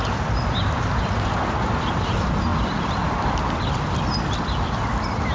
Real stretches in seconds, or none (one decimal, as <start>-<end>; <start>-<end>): 0.0-5.3